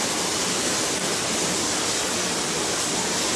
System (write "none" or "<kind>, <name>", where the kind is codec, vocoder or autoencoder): none